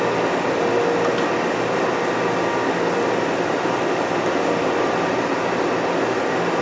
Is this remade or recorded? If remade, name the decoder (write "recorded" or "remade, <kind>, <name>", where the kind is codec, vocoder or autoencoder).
recorded